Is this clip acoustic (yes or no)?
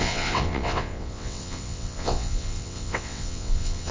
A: no